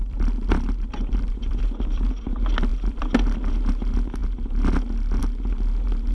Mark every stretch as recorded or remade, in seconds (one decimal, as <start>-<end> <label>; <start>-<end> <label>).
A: 0.0-2.1 remade; 2.1-2.7 recorded; 2.7-3.5 remade; 3.5-6.1 recorded